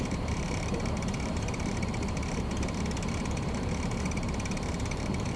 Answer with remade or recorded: remade